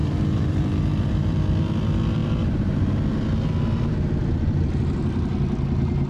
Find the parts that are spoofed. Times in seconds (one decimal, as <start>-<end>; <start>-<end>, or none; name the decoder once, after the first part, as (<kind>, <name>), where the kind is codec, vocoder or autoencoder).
0.0-1.6 (vocoder, BigVGAN v2); 2.2-2.7; 4.2-5.0